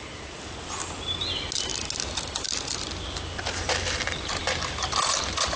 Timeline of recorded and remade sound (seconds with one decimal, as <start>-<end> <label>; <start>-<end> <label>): 0.0-5.6 recorded